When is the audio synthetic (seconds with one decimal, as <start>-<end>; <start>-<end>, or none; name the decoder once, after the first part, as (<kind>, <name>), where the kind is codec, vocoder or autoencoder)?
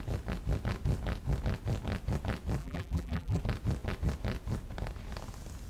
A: 2.6-3.4 (vocoder, BigVGAN v2)